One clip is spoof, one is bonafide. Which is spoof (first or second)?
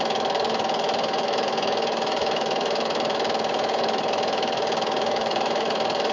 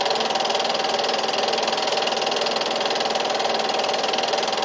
first